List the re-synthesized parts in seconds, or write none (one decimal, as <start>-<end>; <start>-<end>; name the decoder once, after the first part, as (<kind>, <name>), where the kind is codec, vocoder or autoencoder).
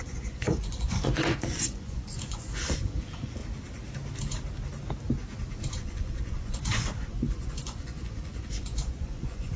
0.0-3.4 (vocoder, Vocos); 5.7-9.6